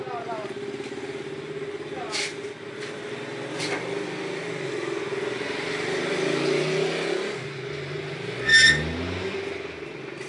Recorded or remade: recorded